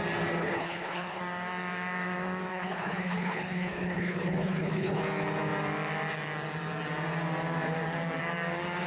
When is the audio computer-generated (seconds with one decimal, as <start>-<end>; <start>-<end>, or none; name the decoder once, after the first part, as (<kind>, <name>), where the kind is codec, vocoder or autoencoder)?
0.4-1.2 (codec, HILCodec); 2.5-5.0